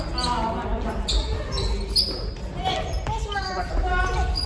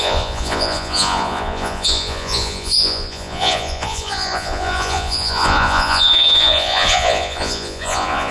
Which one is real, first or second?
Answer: first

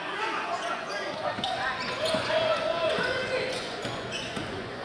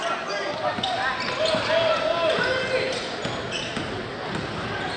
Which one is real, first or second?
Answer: second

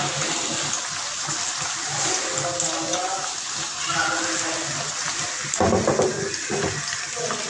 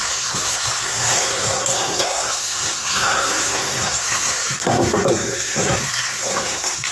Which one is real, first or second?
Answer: first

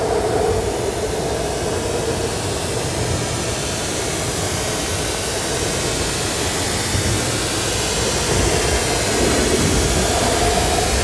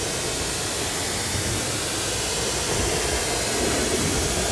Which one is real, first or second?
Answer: first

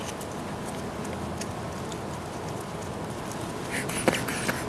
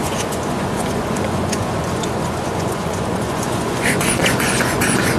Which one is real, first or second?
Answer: first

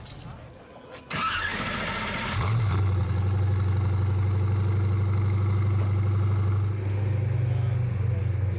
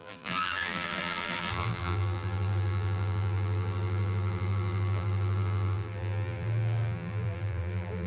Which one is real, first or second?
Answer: first